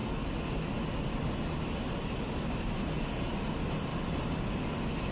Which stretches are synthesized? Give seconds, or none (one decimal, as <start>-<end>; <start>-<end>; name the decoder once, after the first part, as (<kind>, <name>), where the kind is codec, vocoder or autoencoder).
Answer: none